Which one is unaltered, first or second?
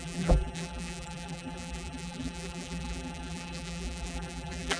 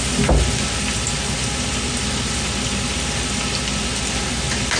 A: second